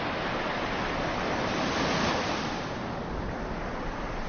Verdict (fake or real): real